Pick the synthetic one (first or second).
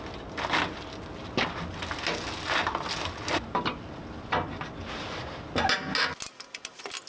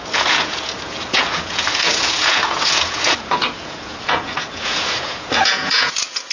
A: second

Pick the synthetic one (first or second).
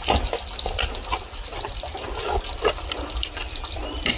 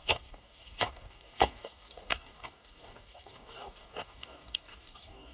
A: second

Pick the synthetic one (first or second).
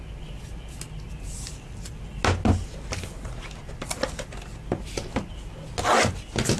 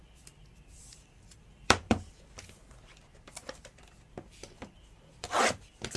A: second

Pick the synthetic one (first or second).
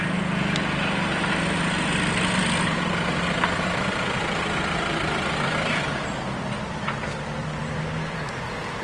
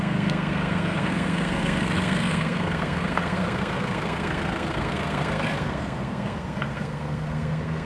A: second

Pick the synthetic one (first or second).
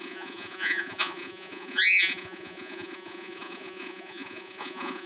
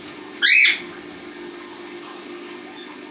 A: first